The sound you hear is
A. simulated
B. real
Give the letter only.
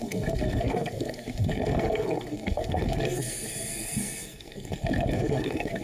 A